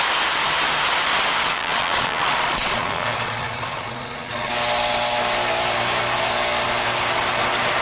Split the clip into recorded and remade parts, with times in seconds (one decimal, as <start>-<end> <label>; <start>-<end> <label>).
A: 0.0-1.4 recorded; 1.4-4.5 remade; 4.5-7.8 recorded